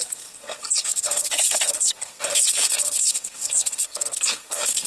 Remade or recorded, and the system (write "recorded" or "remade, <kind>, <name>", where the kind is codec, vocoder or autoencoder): remade, codec, SNAC